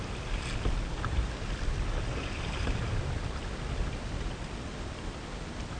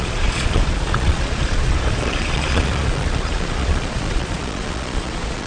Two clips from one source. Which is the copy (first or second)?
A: second